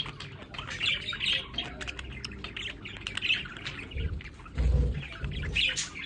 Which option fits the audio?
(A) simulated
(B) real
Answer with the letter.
B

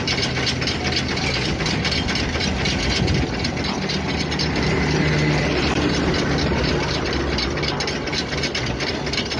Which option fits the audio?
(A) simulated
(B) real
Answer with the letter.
B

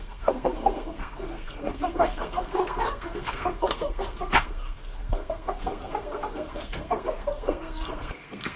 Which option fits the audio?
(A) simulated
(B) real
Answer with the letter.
A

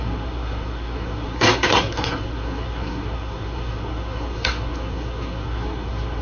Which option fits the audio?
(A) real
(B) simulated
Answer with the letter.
B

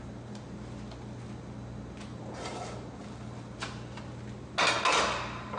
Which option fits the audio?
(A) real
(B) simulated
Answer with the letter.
A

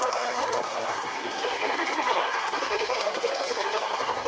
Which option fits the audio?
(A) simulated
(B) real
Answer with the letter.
A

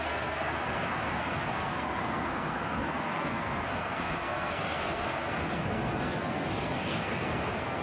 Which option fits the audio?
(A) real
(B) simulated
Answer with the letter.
B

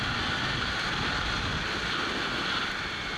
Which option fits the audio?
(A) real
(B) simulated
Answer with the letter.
A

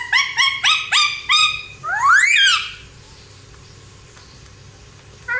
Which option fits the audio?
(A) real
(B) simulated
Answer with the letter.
A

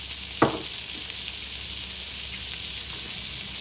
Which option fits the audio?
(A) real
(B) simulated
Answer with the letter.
A